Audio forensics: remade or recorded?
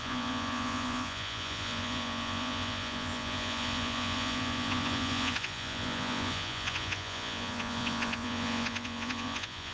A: remade